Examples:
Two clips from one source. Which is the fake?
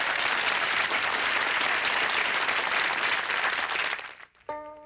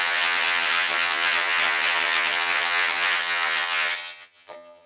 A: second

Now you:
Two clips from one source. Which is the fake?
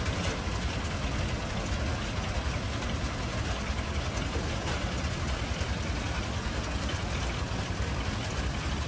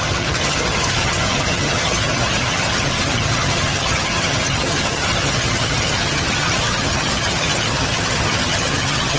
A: second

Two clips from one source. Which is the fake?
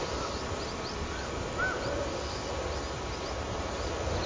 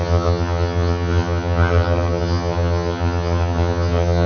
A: second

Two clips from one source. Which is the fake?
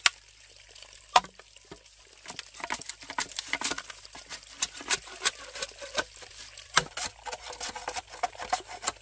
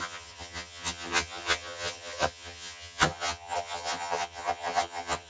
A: second